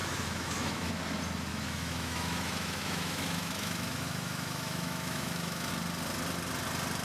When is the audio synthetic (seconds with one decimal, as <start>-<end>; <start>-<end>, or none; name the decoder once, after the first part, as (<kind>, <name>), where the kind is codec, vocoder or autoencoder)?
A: 0.0-0.9 (autoencoder, DAC-VAE); 1.5-5.7